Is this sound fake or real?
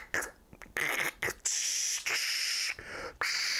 real